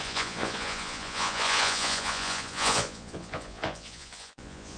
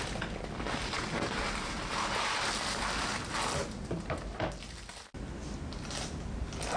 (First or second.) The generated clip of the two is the first